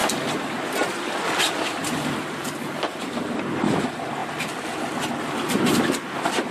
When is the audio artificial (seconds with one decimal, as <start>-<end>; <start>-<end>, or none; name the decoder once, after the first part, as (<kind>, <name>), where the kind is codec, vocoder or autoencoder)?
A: 0.0-3.8 (vocoder, BigVGAN v2)